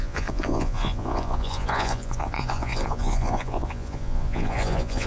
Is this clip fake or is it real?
fake